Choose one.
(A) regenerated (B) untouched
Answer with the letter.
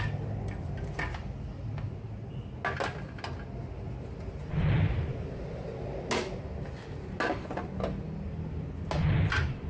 B